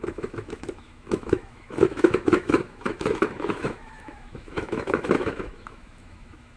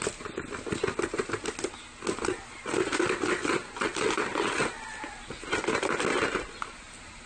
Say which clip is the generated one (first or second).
first